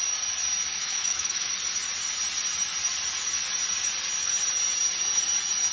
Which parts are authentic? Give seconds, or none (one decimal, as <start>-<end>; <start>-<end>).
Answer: 0.0-0.8; 1.5-5.7